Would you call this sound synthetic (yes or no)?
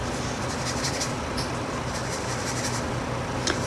yes